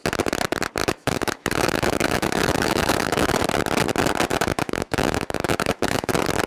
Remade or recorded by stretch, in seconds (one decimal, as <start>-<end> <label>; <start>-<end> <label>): 0.0-0.8 recorded; 0.8-3.4 remade; 3.4-4.3 recorded; 4.3-6.1 remade; 6.1-6.5 recorded